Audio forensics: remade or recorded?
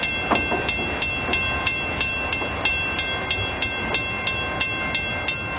recorded